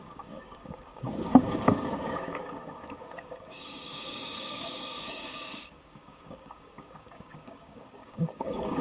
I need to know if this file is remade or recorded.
remade